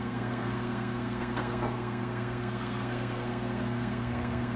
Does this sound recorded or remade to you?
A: remade